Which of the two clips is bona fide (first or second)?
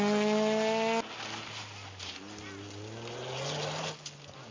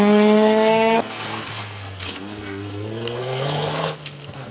first